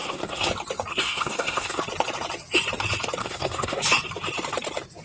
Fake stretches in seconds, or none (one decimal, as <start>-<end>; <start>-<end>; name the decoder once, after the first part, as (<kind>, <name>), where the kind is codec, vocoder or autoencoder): 0.0-0.5 (codec, SNAC); 0.9-1.8; 3.2-3.8